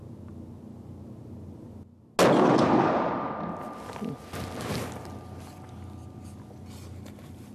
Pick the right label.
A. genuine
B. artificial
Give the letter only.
A